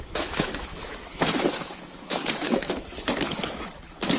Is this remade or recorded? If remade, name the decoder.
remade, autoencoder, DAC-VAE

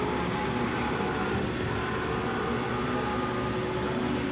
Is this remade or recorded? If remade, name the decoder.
recorded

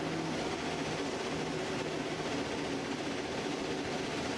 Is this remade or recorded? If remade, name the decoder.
recorded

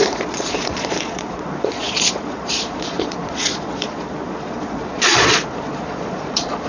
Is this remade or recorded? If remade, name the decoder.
remade, vocoder, Vocos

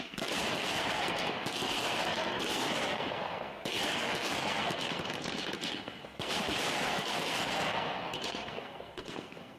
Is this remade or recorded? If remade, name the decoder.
remade, codec, SNAC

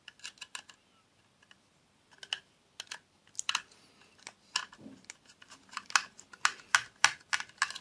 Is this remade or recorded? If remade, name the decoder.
recorded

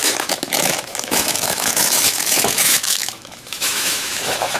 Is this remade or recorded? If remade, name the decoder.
remade, autoencoder, DAC-VAE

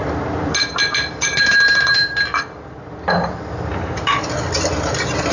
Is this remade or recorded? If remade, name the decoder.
recorded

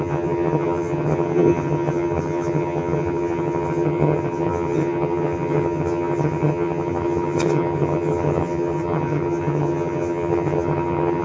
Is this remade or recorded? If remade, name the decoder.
remade, vocoder, HiFi-GAN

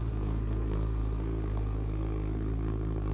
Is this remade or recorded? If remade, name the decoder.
remade, codec, SNAC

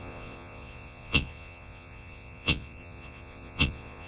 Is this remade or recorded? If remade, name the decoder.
remade, vocoder, Vocos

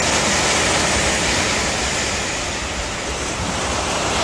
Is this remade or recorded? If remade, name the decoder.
recorded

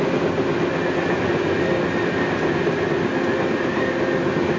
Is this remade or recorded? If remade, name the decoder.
recorded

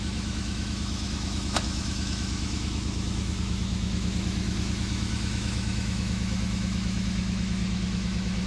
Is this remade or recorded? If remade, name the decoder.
remade, autoencoder, DAC-VAE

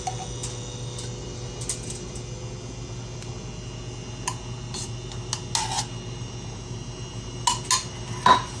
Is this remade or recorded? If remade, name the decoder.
recorded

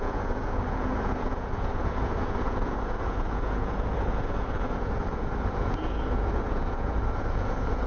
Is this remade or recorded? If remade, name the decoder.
remade, vocoder, Vocos